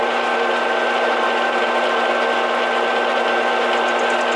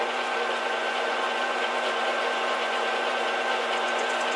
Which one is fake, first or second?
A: second